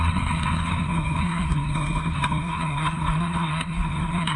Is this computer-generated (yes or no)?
yes